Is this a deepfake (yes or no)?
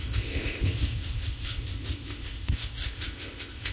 yes